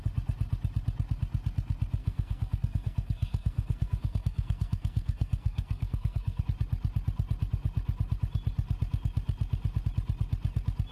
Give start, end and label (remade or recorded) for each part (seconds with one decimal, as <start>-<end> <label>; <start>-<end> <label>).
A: 0.0-2.0 recorded; 2.0-6.4 remade; 6.4-10.9 recorded